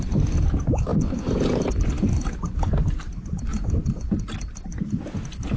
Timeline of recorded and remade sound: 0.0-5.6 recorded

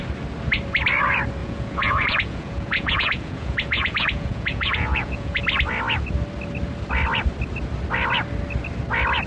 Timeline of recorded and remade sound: 0.0-1.4 recorded; 1.4-5.4 remade; 5.4-9.3 recorded